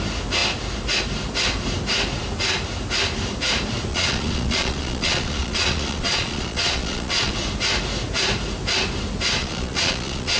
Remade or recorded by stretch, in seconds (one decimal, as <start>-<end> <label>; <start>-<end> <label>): 0.0-3.9 recorded; 3.9-7.3 remade; 7.3-9.4 recorded; 9.4-10.4 remade